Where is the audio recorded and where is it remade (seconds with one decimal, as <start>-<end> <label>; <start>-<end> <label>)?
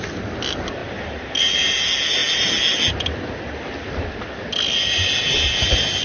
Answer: 0.0-6.0 recorded